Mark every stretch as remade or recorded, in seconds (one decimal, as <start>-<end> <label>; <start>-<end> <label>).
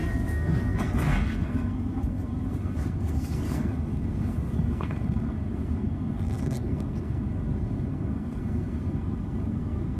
0.0-10.0 remade